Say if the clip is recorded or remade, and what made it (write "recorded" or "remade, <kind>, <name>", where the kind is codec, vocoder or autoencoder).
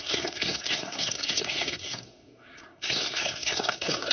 remade, codec, SNAC